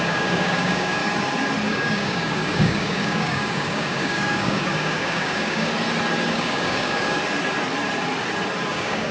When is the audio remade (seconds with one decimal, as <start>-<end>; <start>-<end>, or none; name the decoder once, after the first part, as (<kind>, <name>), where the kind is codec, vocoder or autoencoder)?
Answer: 0.0-1.0 (codec, DAC); 1.7-5.7; 6.3-7.2; 8.7-9.1